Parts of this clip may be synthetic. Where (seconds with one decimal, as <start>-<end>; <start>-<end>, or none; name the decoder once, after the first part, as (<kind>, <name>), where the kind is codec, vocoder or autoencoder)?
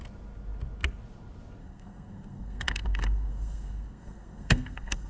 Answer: 1.6-5.1 (codec, SNAC)